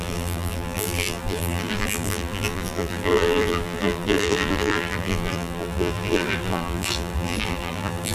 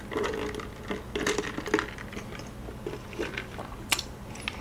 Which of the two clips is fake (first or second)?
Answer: first